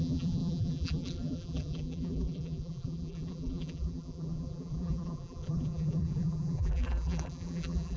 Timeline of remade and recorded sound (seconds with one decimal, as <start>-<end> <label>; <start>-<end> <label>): 0.0-8.0 remade